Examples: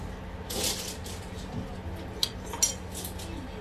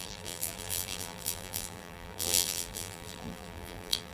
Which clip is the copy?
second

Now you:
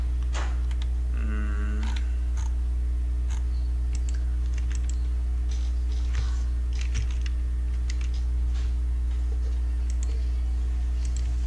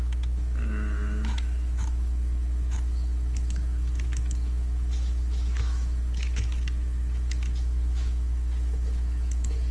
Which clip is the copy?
second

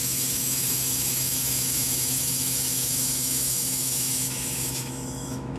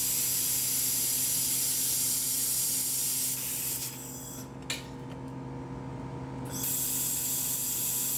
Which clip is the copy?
first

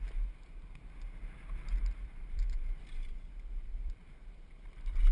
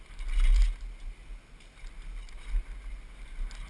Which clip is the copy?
first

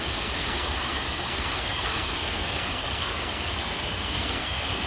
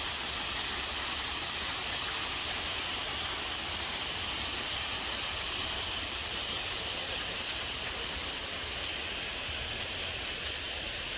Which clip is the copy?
first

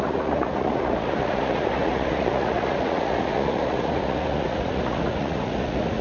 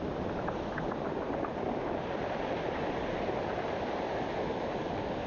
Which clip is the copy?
first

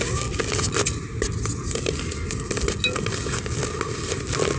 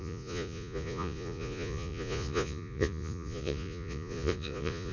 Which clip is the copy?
second